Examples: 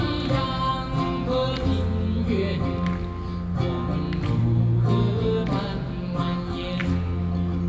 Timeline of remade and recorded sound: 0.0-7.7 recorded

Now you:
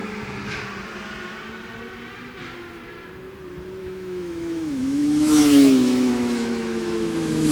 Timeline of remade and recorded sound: 0.0-3.8 recorded; 3.8-7.5 remade

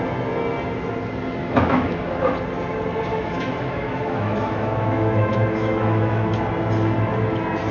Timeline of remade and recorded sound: 0.0-1.4 recorded; 1.4-2.0 remade; 2.0-3.1 recorded; 3.1-6.4 remade; 6.4-7.7 recorded

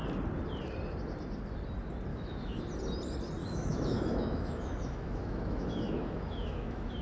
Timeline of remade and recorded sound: 0.0-2.1 recorded; 2.1-2.6 remade; 2.6-3.4 recorded; 3.4-7.0 remade

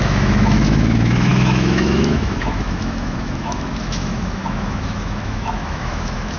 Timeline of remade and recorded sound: 0.0-6.4 remade

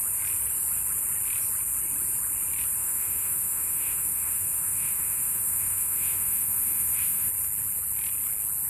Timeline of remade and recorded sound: 0.0-2.8 recorded; 2.8-7.3 remade; 7.3-8.7 recorded

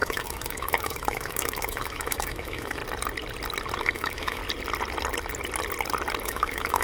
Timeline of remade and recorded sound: 0.0-2.8 remade; 2.8-3.8 recorded; 3.8-4.4 remade; 4.4-6.2 recorded; 6.2-6.8 remade